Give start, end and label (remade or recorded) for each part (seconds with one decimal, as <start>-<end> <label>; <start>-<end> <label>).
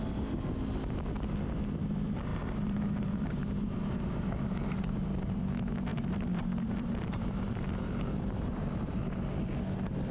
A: 0.0-2.3 recorded; 2.3-5.4 remade; 5.4-5.9 recorded; 5.9-9.0 remade; 9.0-10.1 recorded